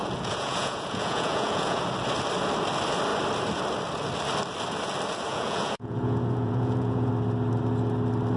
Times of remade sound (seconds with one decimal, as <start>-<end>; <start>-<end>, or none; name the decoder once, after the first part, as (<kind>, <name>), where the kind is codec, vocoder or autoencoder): 0.0-1.8 (vocoder, Vocos); 5.3-7.1